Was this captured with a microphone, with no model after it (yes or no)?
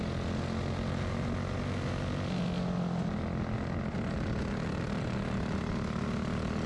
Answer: yes